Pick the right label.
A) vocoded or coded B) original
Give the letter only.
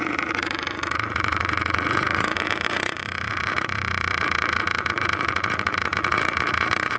A